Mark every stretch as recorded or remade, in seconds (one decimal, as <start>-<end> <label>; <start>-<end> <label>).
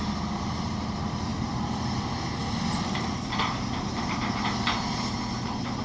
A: 0.0-5.8 recorded